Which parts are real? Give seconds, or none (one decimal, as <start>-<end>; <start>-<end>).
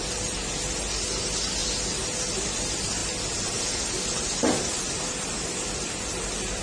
1.6-2.2; 3.0-4.0